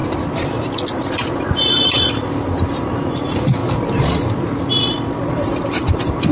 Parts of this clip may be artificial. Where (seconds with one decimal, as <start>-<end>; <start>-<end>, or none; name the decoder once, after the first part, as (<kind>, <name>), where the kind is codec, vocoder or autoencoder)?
1.6-3.6 (vocoder, BigVGAN v2); 5.3-6.3